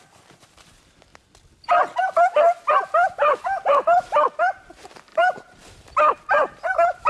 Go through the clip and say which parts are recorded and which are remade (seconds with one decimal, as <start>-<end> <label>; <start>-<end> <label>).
0.0-1.1 remade; 1.1-2.4 recorded; 2.4-7.1 remade